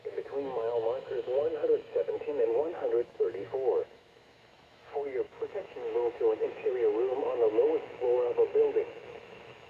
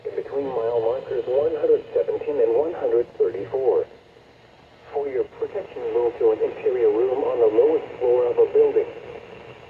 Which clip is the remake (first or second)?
first